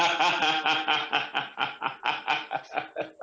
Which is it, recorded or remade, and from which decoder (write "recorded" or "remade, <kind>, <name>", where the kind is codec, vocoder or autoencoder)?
remade, vocoder, BigVGAN v2